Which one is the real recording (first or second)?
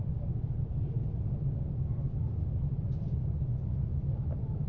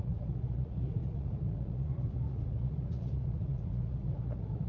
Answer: first